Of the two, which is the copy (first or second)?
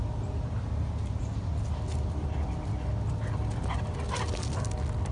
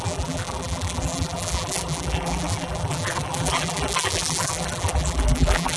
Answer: second